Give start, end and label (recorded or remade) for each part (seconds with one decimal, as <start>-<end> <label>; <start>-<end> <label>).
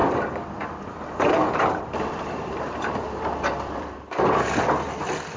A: 0.0-5.4 remade